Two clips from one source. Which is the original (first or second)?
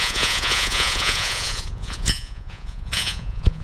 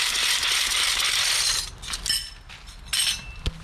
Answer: second